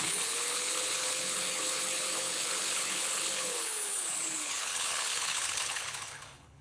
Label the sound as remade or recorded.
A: remade